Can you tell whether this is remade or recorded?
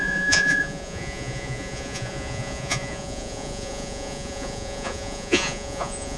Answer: remade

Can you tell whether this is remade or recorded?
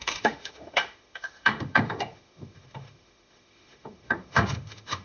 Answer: remade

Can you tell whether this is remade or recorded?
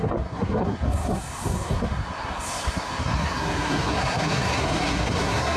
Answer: remade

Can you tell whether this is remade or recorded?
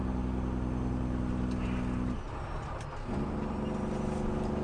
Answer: recorded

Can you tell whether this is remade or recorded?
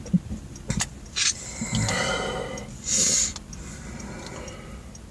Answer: recorded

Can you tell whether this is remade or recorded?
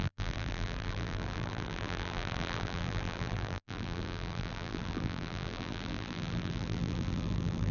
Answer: remade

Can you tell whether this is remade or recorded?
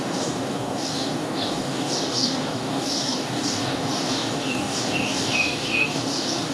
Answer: remade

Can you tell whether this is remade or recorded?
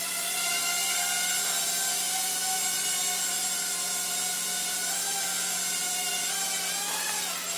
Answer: recorded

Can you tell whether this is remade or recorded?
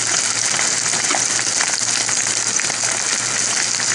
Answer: recorded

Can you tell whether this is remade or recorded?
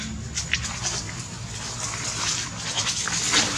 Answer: recorded